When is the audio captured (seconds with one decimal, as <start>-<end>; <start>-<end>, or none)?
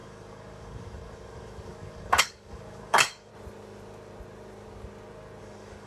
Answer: 3.3-5.4